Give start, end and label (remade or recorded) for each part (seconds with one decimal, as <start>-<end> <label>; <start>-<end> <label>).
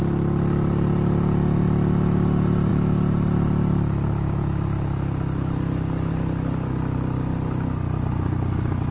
0.0-8.9 recorded